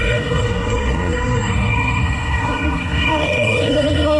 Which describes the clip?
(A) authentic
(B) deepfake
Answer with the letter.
B